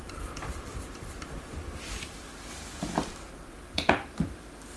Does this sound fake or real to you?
fake